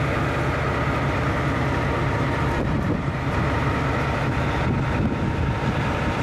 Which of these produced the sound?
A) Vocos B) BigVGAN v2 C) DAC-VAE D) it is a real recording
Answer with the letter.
D